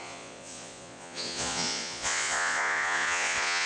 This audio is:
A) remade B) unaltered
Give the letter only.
A